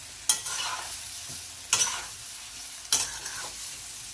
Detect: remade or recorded recorded